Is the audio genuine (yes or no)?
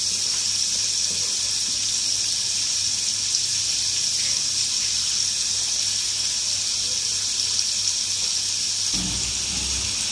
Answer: yes